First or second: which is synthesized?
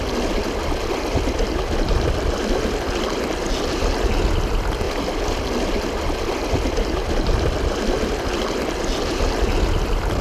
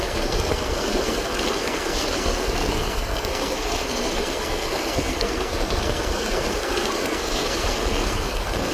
second